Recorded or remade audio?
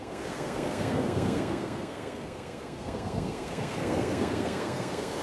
remade